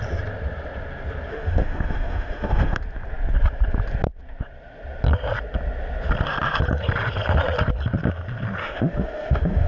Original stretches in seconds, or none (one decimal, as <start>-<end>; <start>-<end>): 0.0-1.3; 2.8-8.6